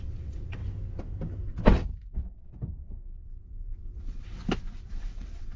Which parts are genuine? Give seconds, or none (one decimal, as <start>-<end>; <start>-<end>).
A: 0.6-4.0; 4.4-4.9